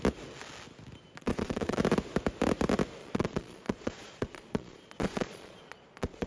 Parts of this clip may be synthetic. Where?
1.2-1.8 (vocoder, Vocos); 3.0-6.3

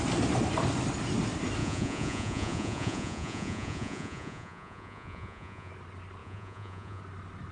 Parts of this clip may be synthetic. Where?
1.6-5.7 (vocoder, Vocos); 6.2-7.0

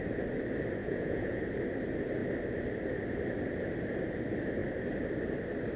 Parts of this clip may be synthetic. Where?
0.8-1.4 (vocoder, Vocos)

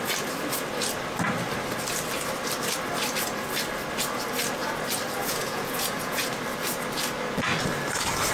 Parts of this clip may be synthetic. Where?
5.2-6.3 (vocoder, Vocos)